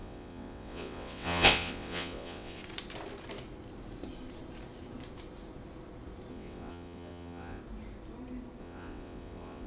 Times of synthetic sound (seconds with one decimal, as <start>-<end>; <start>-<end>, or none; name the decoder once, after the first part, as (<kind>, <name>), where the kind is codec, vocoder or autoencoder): 0.0-2.6 (vocoder, WaveNeXt); 6.3-7.6; 8.6-9.7